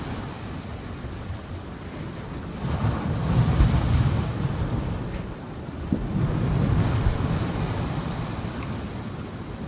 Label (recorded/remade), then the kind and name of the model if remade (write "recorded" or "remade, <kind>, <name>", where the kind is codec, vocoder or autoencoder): recorded